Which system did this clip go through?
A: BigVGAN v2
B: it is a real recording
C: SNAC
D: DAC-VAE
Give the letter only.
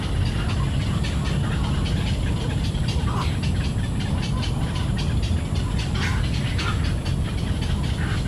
B